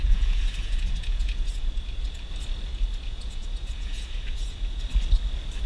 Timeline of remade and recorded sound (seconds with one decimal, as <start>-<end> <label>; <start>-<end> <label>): 0.0-2.3 remade; 2.3-2.7 recorded; 2.7-4.8 remade; 4.8-5.7 recorded